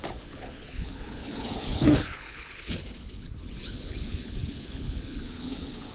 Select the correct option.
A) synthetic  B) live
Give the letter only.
A